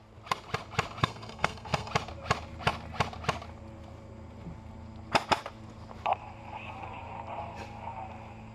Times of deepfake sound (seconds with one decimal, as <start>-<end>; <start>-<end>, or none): 1.0-1.9